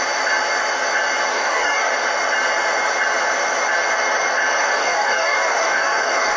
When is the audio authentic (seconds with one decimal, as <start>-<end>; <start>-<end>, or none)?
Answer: 0.0-1.3; 1.9-4.6